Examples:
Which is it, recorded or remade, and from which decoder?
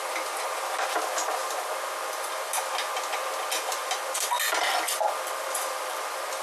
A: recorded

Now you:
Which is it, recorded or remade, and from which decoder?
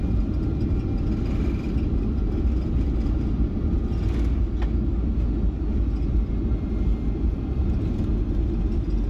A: recorded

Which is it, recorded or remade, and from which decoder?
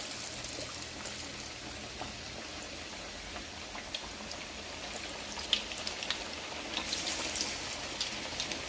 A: recorded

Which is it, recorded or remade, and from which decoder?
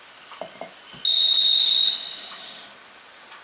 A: recorded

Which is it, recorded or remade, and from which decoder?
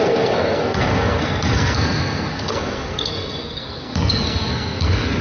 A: remade, codec, SNAC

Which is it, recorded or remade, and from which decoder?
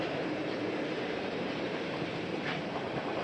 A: remade, vocoder, BigVGAN v2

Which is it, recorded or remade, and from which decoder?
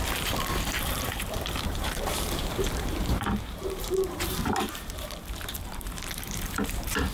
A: remade, vocoder, BigVGAN v2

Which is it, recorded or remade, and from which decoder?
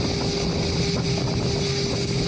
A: recorded